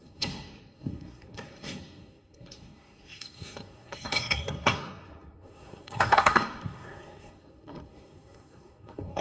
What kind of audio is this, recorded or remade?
remade